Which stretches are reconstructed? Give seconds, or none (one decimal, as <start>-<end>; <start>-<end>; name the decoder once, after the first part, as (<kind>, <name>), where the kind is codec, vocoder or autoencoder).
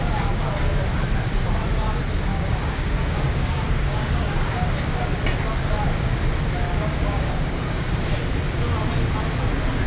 2.3-5.2 (codec, DAC); 6.6-7.9